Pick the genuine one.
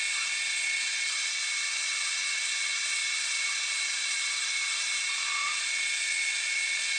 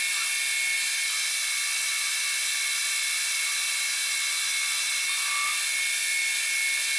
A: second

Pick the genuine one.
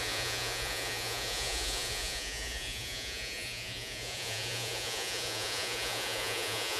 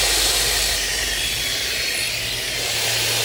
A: second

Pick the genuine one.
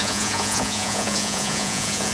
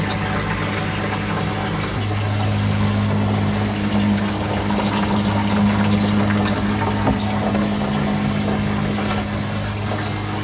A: second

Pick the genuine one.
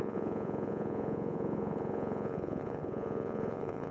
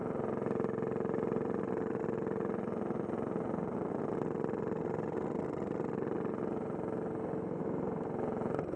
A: second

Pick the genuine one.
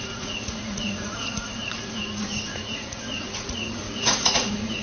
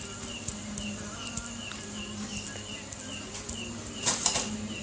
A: second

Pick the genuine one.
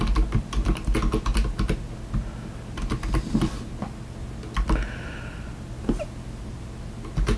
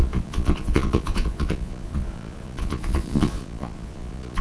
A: first